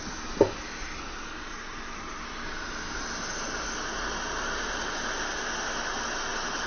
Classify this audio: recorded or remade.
recorded